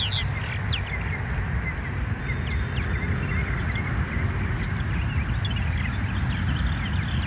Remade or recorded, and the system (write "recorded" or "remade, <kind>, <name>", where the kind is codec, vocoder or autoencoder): recorded